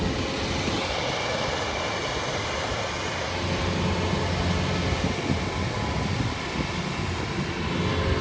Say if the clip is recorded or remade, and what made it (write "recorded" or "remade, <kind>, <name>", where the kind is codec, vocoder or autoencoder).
recorded